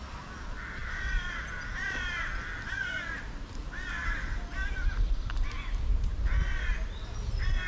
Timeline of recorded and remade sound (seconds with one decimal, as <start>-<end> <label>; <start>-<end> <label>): 0.0-7.7 recorded